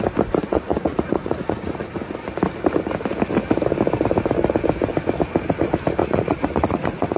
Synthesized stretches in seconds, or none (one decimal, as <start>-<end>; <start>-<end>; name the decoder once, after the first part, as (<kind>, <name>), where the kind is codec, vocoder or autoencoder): 0.4-1.9 (vocoder, Vocos); 6.0-7.2